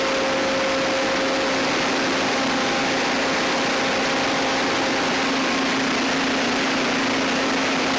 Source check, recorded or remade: recorded